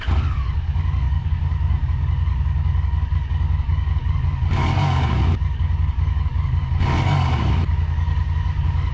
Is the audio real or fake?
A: fake